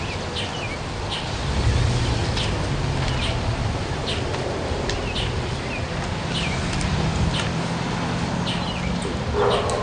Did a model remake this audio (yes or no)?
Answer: no